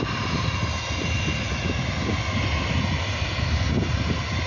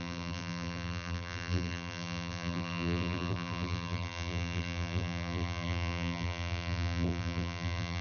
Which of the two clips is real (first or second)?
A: first